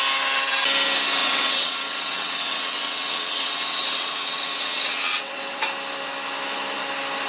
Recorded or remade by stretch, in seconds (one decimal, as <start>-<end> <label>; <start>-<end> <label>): 0.0-1.2 recorded; 1.2-5.6 remade; 5.6-7.3 recorded